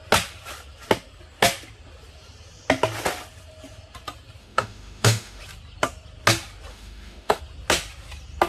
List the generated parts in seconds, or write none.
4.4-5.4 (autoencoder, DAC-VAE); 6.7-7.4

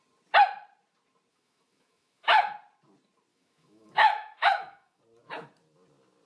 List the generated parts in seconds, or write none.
1.3-2.5 (autoencoder, DAC-VAE); 3.3-5.0

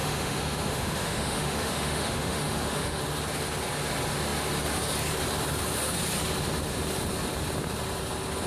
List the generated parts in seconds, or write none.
0.0-3.0 (autoencoder, DAC-VAE)